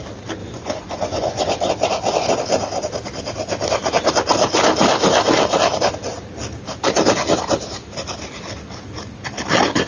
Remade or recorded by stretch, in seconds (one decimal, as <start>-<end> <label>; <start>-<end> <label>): 0.0-0.4 recorded; 0.4-1.7 remade; 1.7-9.9 recorded